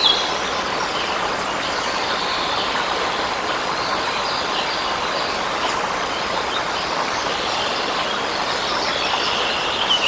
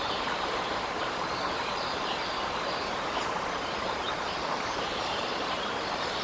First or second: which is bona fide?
first